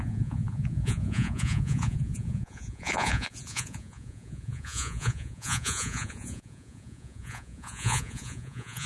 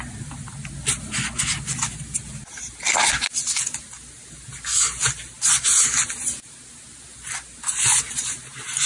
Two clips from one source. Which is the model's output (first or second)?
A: first